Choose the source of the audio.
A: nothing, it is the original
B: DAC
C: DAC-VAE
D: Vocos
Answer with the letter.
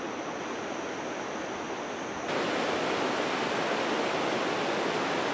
A